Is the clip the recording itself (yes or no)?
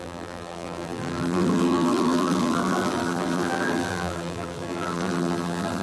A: no